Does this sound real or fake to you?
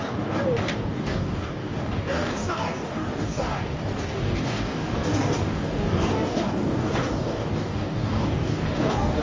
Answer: fake